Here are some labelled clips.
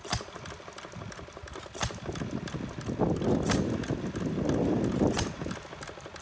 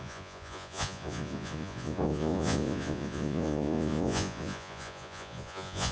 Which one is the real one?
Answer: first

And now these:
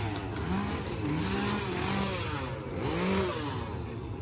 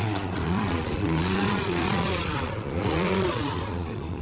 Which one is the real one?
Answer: first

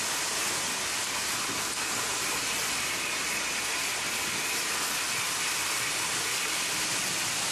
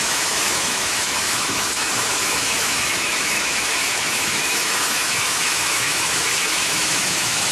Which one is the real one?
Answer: first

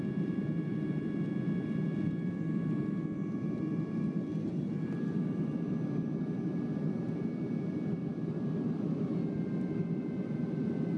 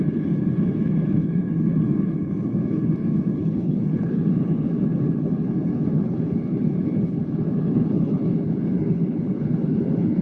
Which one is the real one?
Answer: first